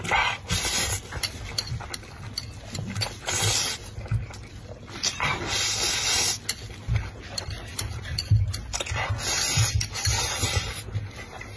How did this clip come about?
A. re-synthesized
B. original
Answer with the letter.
B